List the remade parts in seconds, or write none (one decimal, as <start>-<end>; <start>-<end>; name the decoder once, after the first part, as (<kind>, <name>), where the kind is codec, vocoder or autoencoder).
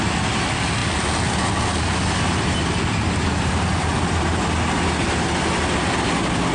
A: 0.8-4.2 (vocoder, BigVGAN v2)